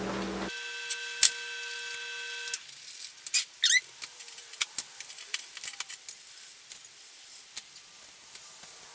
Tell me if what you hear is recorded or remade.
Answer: recorded